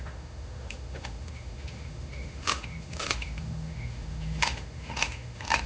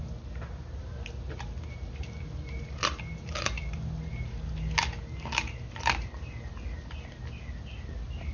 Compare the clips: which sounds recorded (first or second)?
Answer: second